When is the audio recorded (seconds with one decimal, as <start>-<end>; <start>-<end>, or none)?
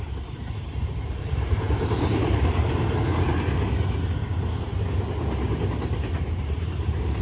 3.3-5.7